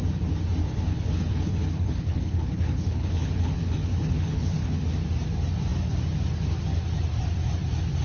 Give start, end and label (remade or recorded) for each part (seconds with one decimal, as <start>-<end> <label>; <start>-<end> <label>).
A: 0.0-0.6 recorded; 0.6-4.9 remade; 4.9-8.0 recorded